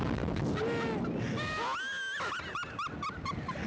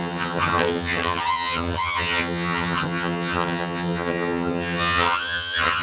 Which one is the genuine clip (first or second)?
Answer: first